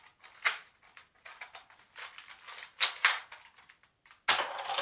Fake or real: real